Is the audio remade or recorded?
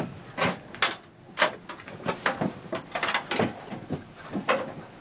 recorded